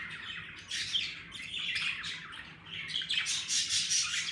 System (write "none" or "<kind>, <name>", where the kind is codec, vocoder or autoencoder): none